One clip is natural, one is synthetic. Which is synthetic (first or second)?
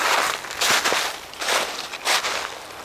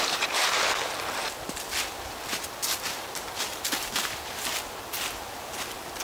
second